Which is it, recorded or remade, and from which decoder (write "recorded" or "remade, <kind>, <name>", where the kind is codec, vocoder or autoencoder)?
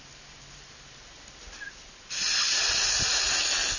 recorded